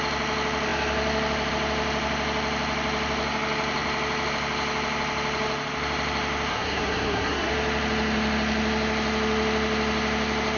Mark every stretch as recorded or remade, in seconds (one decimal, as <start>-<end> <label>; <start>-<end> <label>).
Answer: 0.0-6.5 recorded; 6.5-7.5 remade; 7.5-10.6 recorded